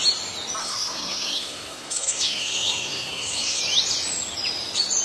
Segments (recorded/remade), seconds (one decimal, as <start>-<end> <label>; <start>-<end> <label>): 0.0-0.6 recorded; 0.6-3.6 remade; 3.6-5.0 recorded